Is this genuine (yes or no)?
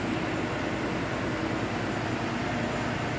yes